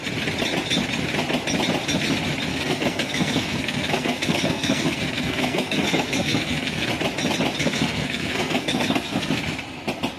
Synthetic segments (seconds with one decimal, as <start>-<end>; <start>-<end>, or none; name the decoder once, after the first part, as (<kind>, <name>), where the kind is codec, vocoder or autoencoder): 2.5-6.9 (codec, SNAC); 7.6-9.3

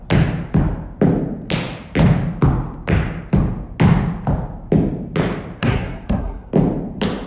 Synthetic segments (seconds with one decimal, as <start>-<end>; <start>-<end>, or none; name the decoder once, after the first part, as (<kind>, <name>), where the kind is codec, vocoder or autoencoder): 5.6-6.5 (codec, SNAC)